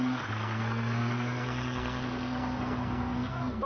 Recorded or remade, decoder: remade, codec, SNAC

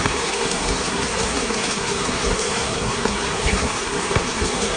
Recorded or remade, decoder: remade, codec, SNAC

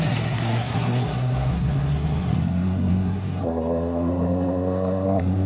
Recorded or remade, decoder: remade, codec, SNAC